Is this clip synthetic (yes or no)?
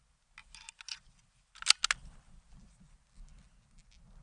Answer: no